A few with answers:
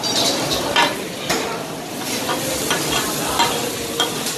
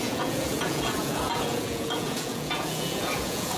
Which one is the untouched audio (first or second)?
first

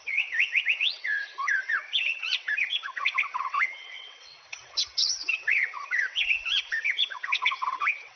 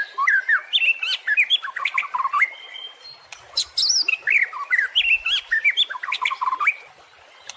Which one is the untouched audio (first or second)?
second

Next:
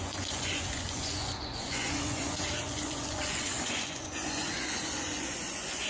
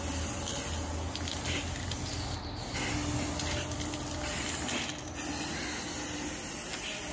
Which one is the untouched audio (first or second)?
second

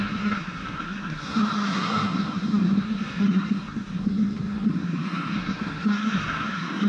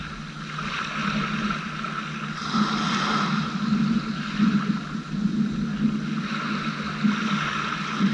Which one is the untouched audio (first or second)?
second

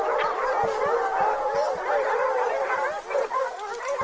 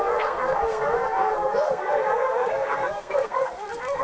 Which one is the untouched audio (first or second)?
first